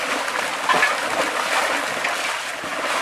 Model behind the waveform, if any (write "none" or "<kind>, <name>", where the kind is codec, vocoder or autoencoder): none